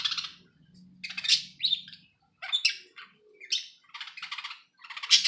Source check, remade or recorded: recorded